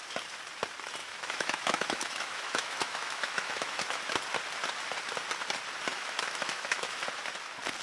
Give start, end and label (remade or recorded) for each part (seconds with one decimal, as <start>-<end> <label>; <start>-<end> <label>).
0.0-1.0 recorded; 1.0-4.0 remade; 4.0-5.9 recorded; 5.9-7.0 remade; 7.0-7.8 recorded